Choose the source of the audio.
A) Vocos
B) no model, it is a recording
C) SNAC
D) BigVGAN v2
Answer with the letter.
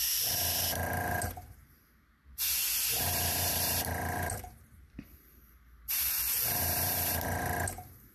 D